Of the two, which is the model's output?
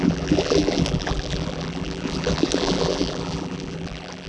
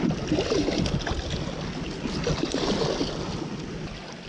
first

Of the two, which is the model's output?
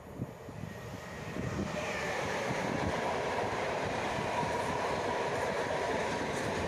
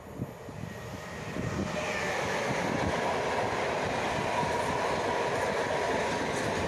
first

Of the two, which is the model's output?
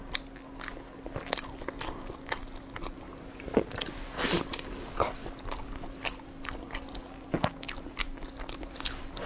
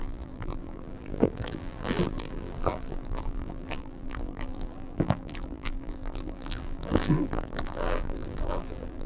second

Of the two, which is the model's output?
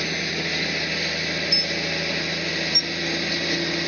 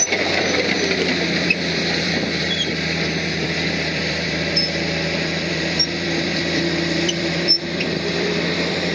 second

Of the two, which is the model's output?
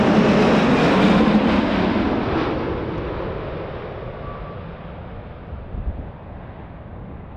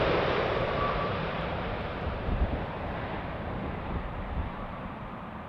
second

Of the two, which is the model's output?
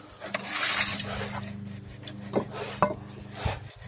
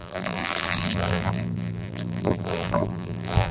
second